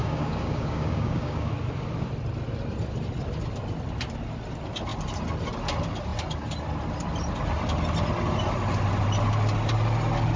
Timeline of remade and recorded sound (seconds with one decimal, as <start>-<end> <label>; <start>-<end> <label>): 0.0-1.5 remade; 1.5-10.4 recorded